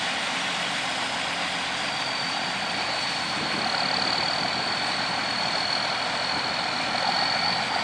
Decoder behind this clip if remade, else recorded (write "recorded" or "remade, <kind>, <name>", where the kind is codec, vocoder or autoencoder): recorded